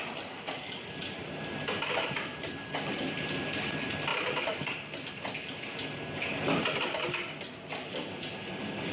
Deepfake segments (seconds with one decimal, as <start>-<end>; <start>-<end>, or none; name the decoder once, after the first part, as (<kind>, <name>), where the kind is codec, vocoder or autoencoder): 0.0-4.1 (vocoder, BigVGAN v2); 8.1-8.9